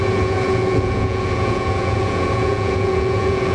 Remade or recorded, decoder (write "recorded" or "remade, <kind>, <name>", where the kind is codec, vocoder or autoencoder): remade, vocoder, Vocos